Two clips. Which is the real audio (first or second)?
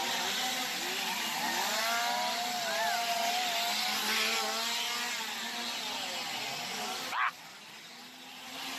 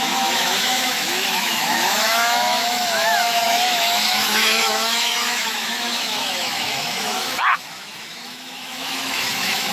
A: first